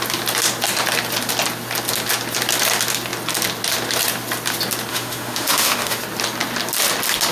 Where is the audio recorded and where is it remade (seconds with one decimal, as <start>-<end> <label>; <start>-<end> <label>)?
0.0-4.9 recorded; 4.9-6.0 remade; 6.0-7.3 recorded